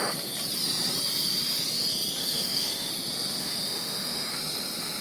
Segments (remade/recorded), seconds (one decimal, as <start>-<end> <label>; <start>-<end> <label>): 0.0-2.2 recorded; 2.2-2.9 remade; 2.9-3.4 recorded; 3.4-4.3 remade; 4.3-5.0 recorded